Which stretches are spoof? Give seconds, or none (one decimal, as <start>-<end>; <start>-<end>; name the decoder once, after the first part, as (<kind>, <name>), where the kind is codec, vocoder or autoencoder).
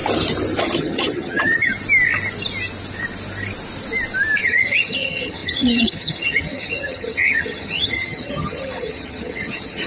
0.6-1.7 (vocoder, HiFi-GAN); 4.4-9.9